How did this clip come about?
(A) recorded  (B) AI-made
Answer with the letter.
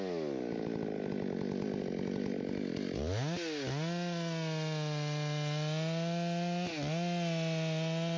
A